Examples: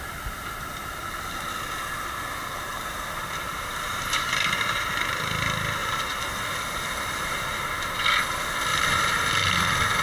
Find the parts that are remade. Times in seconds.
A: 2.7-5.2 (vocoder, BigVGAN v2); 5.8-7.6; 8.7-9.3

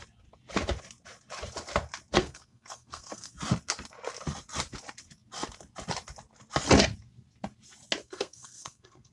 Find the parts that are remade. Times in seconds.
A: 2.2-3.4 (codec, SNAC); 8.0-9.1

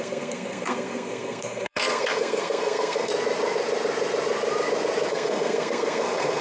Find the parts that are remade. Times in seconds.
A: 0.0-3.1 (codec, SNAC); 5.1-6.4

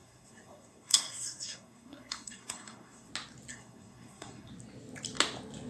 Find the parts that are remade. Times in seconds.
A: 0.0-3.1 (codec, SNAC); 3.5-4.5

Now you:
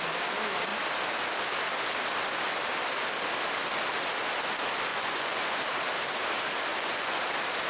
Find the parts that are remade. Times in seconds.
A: 4.9-5.6 (vocoder, Vocos); 6.7-7.2

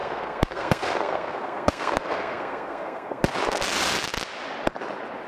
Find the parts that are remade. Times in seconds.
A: 0.0-3.2 (codec, SNAC)

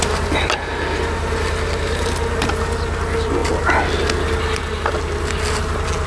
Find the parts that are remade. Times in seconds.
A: none